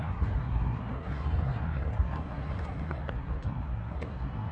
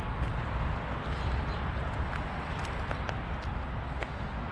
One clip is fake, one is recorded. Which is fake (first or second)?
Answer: first